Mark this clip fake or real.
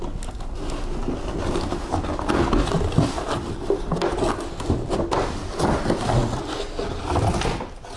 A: real